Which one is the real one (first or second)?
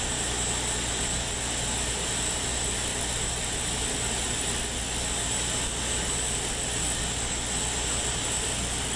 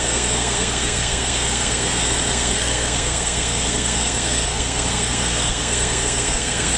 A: first